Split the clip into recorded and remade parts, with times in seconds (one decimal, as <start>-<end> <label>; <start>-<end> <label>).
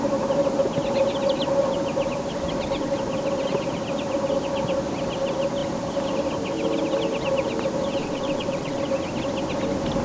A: 0.0-8.0 recorded; 8.0-8.8 remade; 8.8-10.0 recorded